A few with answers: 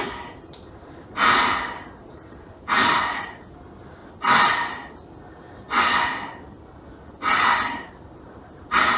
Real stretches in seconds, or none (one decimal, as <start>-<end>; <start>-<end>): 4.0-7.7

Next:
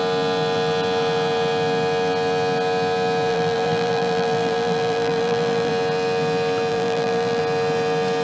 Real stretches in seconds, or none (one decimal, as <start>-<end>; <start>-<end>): 0.0-3.3; 5.7-6.7; 7.4-8.2

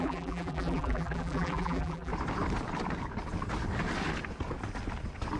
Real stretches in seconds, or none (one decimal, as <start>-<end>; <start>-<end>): 2.1-5.4

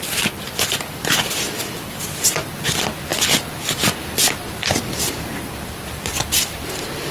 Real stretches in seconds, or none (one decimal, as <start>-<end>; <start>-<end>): 0.0-3.1; 5.4-7.1